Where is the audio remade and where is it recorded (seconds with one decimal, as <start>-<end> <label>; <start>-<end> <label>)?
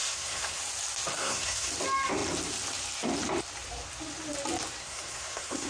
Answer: 0.0-0.6 remade; 0.6-1.2 recorded; 1.2-1.7 remade; 1.7-4.8 recorded; 4.8-5.7 remade